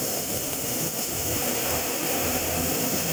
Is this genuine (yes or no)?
no